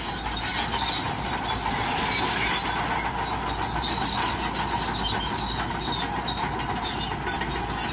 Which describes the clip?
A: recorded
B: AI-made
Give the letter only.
A